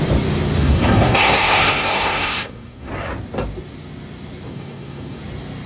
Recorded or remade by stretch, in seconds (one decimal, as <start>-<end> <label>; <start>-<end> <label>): 0.0-0.6 recorded; 0.6-2.9 remade; 2.9-4.5 recorded; 4.5-5.2 remade; 5.2-5.7 recorded